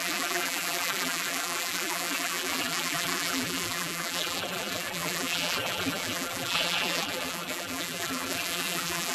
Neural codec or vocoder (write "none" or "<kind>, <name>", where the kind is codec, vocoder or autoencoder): vocoder, BigVGAN v2